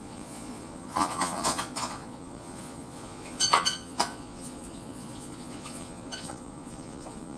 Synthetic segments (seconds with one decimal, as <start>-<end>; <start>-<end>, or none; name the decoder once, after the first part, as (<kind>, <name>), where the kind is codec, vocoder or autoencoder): 0.0-7.4 (vocoder, Vocos)